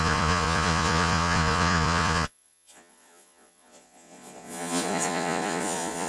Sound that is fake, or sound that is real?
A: fake